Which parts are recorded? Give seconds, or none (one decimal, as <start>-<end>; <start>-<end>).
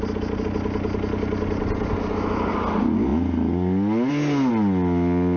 0.0-5.4